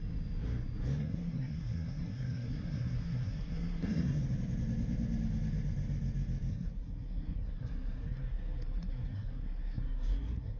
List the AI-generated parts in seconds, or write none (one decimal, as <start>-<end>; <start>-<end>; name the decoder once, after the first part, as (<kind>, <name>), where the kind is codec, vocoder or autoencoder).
1.0-4.2 (codec, SNAC); 6.5-10.6